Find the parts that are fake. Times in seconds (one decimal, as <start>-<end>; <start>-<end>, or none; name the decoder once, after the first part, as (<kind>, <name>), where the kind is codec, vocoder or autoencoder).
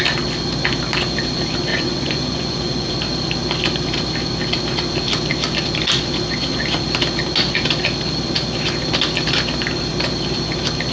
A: 1.7-2.9 (vocoder, Vocos)